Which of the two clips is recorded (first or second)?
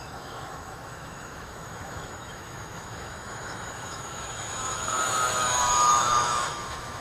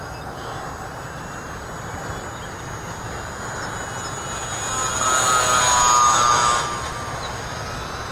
second